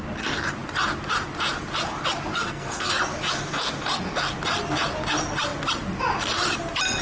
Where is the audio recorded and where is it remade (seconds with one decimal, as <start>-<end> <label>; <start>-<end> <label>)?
0.0-2.3 recorded; 2.3-2.9 remade; 2.9-7.0 recorded